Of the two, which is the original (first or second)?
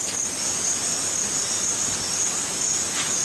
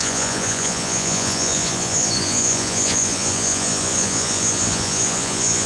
first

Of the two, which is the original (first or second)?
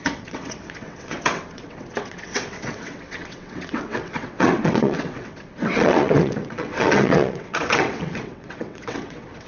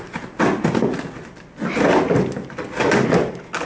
second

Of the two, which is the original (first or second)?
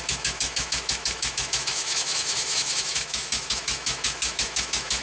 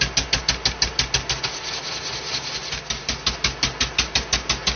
second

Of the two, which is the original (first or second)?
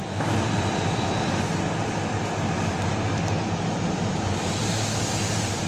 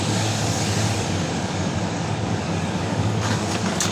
first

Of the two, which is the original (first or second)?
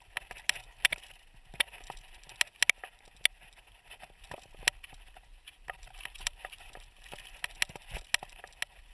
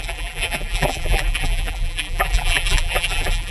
first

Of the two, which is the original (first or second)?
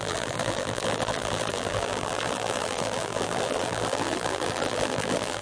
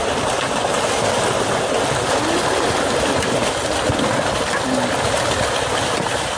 second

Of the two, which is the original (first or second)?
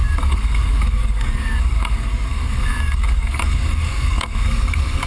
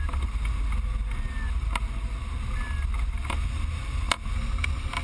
second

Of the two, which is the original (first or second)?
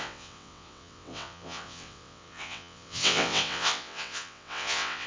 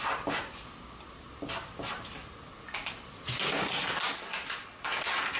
second